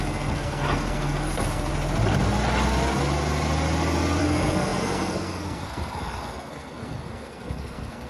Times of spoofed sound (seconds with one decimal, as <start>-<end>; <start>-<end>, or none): 0.0-1.7; 4.2-8.1